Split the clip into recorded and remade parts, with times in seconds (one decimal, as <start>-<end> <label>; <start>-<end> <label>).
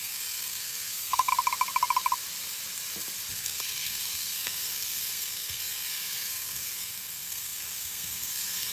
0.0-1.3 remade; 1.3-3.3 recorded; 3.3-8.7 remade